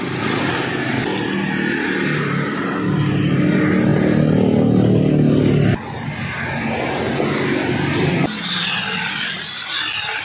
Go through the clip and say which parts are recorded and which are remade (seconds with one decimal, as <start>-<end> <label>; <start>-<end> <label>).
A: 0.0-10.2 recorded